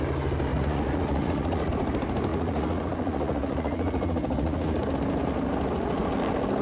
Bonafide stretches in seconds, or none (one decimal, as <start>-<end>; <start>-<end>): 0.0-0.5; 1.7-2.3; 4.9-6.6